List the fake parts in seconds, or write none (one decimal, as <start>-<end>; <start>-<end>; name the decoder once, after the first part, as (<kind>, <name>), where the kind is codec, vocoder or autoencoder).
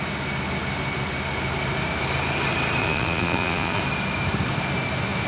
2.8-3.8 (vocoder, Vocos)